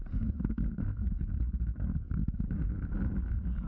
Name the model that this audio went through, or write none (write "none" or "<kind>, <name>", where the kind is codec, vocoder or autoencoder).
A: none